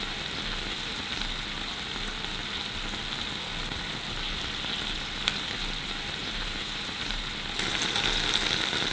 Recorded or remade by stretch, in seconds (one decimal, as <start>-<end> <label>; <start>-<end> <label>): 0.0-6.2 recorded; 6.2-7.2 remade; 7.2-8.9 recorded